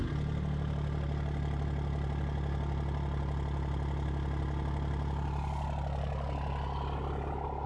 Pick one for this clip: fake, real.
real